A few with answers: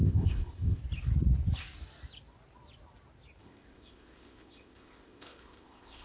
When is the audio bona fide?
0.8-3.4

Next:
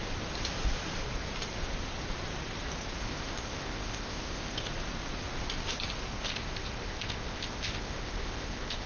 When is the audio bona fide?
0.0-3.0; 4.7-6.1

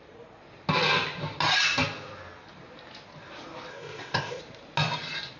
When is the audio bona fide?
0.0-3.7; 4.4-5.4

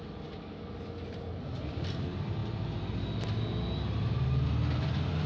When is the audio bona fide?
0.0-5.3

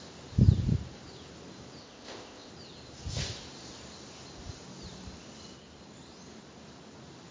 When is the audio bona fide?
0.0-1.8; 2.5-7.3

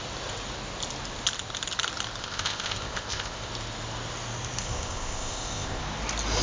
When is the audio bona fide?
0.0-2.2; 3.5-4.6; 5.8-6.4